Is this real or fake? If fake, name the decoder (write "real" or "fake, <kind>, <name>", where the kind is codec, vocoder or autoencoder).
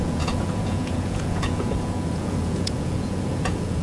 fake, vocoder, Vocos